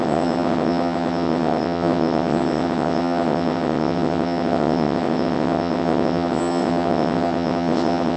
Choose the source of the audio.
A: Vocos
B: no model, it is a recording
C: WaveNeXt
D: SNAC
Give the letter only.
C